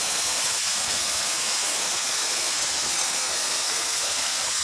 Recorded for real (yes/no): no